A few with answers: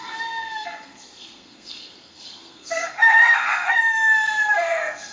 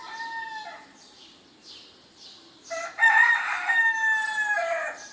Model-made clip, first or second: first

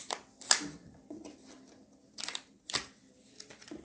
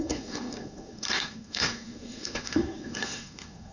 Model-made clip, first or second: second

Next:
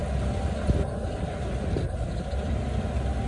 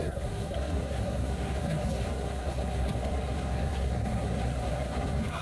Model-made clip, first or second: second